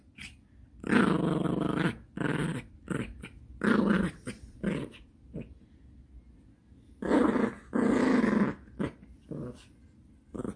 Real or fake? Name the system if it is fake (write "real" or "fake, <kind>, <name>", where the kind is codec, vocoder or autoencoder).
real